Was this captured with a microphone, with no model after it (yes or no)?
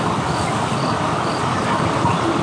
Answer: yes